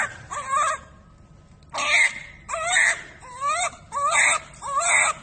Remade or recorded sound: recorded